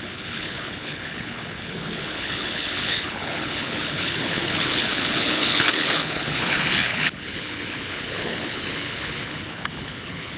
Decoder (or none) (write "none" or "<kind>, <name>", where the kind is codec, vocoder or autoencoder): codec, HILCodec